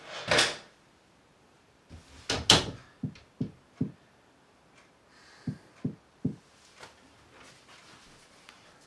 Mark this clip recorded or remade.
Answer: recorded